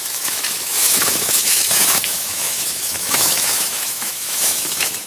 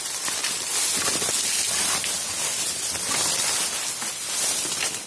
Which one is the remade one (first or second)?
first